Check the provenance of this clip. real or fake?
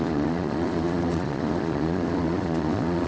fake